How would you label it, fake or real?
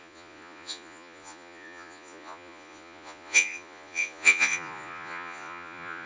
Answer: fake